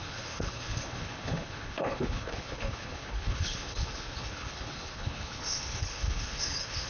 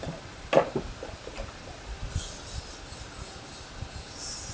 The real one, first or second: second